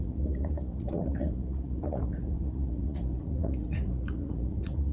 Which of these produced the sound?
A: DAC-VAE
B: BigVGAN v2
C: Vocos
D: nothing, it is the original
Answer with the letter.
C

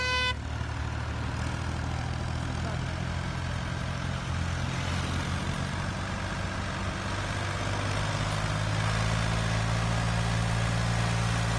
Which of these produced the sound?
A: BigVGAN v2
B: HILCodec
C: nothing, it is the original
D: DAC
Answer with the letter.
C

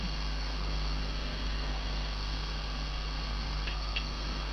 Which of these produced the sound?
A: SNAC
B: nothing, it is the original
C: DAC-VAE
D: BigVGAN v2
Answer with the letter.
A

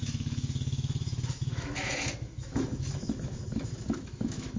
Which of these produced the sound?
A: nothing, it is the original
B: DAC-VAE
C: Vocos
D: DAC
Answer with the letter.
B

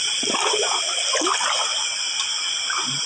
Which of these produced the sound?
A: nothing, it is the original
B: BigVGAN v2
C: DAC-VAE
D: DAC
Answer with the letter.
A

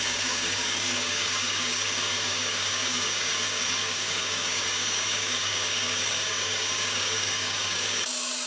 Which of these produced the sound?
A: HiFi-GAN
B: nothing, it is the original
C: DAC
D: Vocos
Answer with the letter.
C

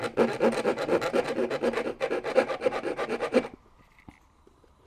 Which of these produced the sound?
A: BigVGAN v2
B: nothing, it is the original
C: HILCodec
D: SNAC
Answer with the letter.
B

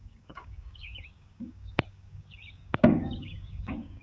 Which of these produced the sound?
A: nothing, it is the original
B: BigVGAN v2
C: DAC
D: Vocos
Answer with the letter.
C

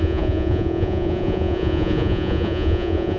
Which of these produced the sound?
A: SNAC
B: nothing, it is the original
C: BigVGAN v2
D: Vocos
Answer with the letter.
D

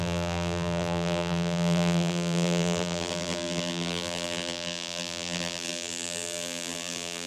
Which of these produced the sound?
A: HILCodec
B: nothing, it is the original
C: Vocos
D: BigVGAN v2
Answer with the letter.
D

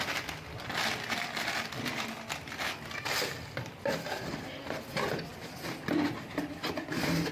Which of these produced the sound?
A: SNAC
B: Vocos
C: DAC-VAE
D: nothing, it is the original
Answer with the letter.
D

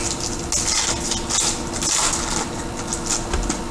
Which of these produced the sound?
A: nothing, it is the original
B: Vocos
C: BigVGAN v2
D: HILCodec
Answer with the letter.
A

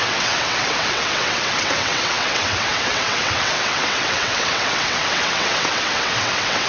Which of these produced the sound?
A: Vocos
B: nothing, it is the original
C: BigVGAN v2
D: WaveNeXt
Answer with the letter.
D